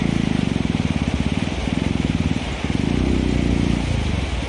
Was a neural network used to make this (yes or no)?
no